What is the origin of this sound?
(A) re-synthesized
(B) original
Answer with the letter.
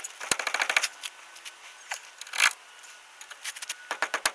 B